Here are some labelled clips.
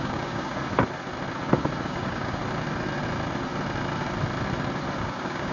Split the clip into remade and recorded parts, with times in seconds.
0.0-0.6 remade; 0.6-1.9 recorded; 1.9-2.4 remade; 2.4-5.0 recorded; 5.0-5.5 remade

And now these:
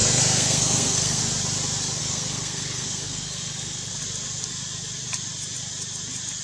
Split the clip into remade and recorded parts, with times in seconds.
0.0-1.2 remade; 1.2-2.0 recorded; 2.0-3.9 remade; 3.9-6.4 recorded

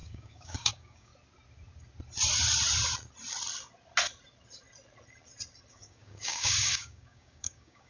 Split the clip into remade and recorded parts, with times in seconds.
0.0-1.1 remade; 1.1-5.7 recorded; 5.7-7.9 remade

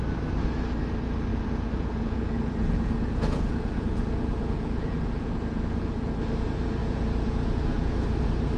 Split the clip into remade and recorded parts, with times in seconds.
0.0-1.3 recorded; 1.3-6.1 remade; 6.1-6.8 recorded; 6.8-8.2 remade; 8.2-8.6 recorded

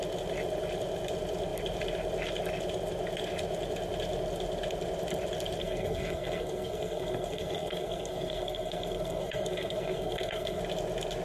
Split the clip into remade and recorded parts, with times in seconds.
0.0-5.6 recorded; 5.6-10.6 remade; 10.6-11.2 recorded

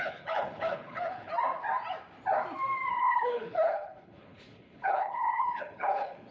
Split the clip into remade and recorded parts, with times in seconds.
0.0-1.3 remade; 1.3-2.9 recorded; 2.9-6.3 remade